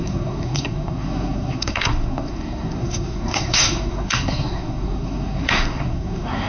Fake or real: fake